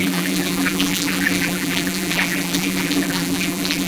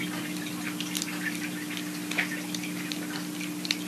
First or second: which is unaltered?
second